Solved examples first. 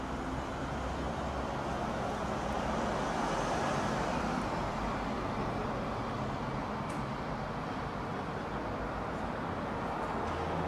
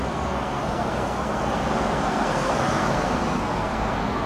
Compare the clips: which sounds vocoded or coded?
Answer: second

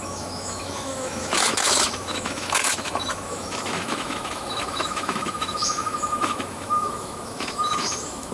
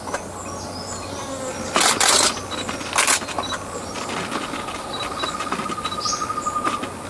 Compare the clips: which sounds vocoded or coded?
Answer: first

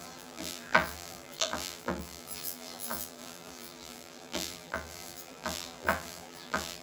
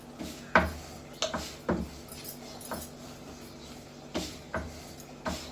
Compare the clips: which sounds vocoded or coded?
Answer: first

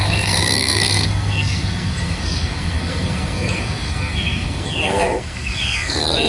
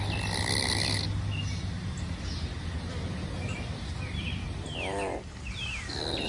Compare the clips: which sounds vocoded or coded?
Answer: first